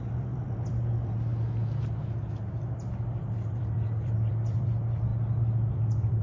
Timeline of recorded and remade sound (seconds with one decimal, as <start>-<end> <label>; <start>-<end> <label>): 0.0-1.3 remade; 1.3-3.2 recorded; 3.2-5.1 remade; 5.1-5.7 recorded; 5.7-6.2 remade